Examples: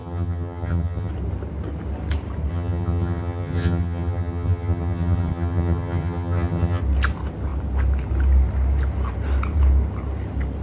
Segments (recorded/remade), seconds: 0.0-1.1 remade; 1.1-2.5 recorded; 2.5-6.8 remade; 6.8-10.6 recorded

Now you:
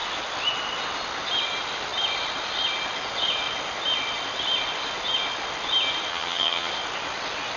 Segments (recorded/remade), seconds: 0.0-6.1 recorded; 6.1-6.7 remade; 6.7-7.6 recorded

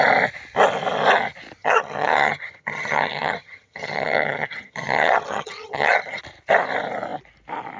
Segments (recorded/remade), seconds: 0.0-1.6 recorded; 1.6-6.2 remade; 6.2-7.8 recorded

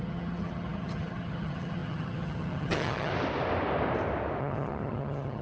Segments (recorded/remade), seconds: 0.0-3.1 remade; 3.1-4.4 recorded; 4.4-5.4 remade

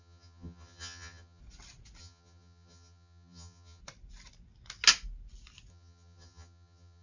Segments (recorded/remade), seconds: 0.0-1.4 remade; 1.4-2.0 recorded; 2.0-3.8 remade; 3.8-5.7 recorded; 5.7-7.0 remade

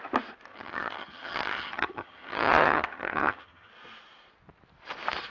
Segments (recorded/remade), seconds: 0.0-0.5 recorded; 0.5-3.7 remade; 3.7-5.3 recorded

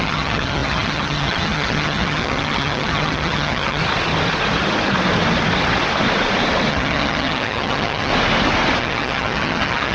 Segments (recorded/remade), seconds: 0.0-3.8 remade; 3.8-6.7 recorded; 6.7-8.1 remade; 8.1-8.8 recorded; 8.8-9.9 remade

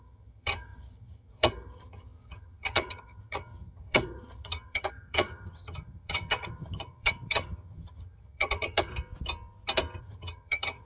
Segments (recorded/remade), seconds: 0.0-8.9 remade; 8.9-10.0 recorded; 10.0-10.9 remade